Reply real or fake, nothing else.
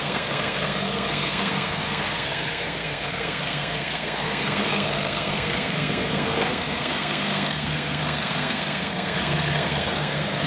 fake